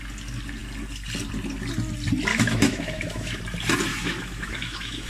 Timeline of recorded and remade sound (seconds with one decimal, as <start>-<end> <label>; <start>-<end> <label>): 0.0-2.3 recorded; 2.3-3.4 remade; 3.4-3.9 recorded; 3.9-5.1 remade